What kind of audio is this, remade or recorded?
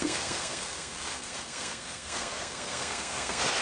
remade